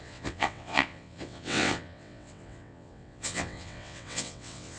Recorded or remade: remade